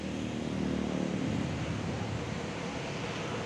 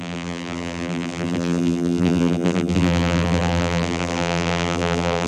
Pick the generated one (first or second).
second